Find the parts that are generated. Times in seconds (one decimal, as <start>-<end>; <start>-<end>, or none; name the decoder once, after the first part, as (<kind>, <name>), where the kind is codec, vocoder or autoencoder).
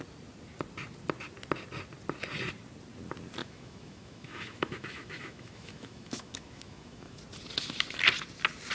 3.4-7.2 (autoencoder, DAC-VAE)